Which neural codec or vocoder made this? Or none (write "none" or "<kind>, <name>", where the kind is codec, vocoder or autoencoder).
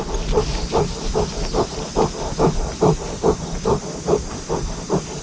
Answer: none